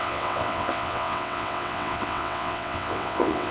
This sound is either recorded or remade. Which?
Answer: remade